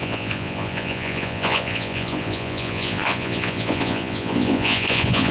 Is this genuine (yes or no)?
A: no